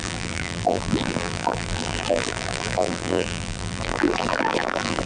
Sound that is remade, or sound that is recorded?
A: remade